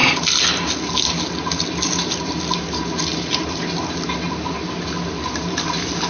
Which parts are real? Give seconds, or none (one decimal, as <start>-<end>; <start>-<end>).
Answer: 0.0-6.1